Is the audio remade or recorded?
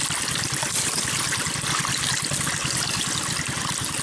recorded